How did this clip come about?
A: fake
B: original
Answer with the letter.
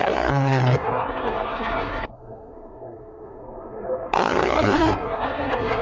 A